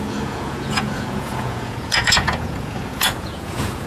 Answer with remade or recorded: remade